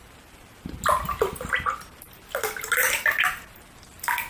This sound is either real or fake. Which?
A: real